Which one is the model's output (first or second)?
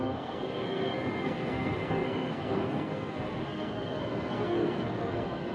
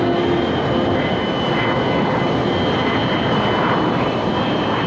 first